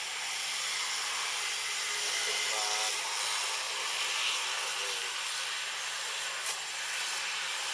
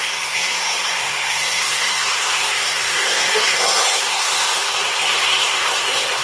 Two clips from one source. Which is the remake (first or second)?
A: second